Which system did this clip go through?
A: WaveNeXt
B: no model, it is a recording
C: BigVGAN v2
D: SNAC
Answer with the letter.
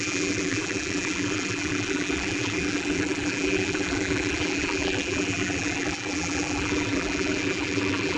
C